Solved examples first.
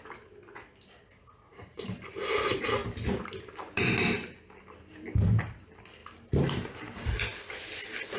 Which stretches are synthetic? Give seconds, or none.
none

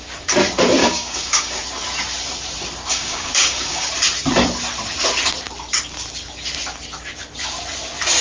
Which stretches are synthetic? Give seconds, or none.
0.8-1.6 (codec, DAC); 2.9-3.9

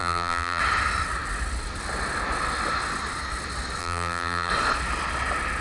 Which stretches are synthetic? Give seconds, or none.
0.0-0.6 (vocoder, BigVGAN v2); 3.8-4.5

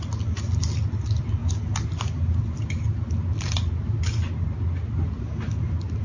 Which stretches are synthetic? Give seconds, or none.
none

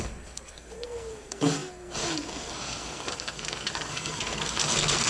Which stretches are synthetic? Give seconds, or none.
0.0-5.1 (codec, SNAC)

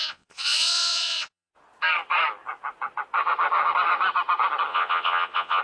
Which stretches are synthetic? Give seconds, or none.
0.0-1.5 (vocoder, Vocos); 4.7-5.6